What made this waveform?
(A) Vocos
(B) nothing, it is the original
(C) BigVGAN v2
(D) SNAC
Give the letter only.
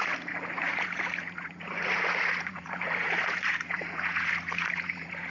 A